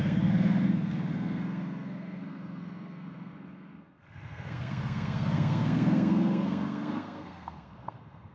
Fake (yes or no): yes